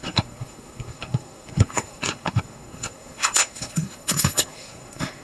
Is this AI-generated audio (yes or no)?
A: yes